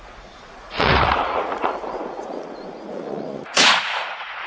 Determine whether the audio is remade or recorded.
remade